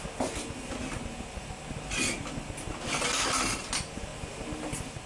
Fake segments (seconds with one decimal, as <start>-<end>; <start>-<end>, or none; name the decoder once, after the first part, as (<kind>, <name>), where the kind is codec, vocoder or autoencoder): none